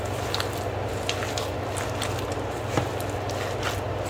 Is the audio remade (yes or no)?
no